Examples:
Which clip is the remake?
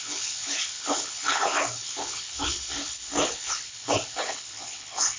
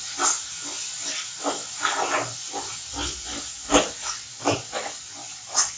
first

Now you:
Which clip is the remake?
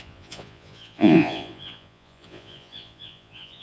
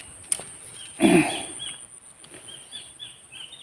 first